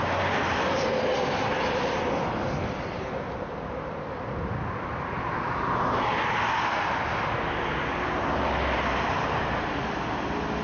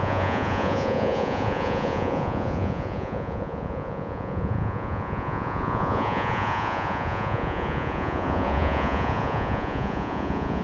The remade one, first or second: second